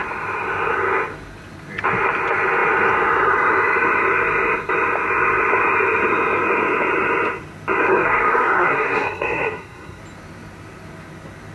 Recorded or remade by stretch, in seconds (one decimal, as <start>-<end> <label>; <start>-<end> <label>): 0.0-7.9 recorded; 7.9-10.0 remade; 10.0-11.5 recorded